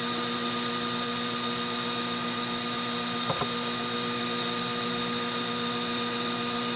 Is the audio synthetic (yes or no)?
no